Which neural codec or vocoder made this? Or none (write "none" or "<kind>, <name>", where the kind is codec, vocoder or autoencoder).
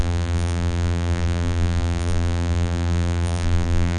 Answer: vocoder, BigVGAN v2